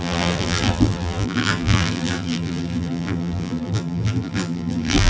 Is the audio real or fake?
fake